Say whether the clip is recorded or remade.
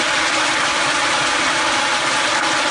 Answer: recorded